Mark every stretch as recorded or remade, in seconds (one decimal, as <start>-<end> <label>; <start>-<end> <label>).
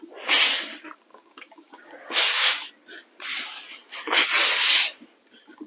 0.0-1.1 recorded; 1.1-2.6 remade; 2.6-5.7 recorded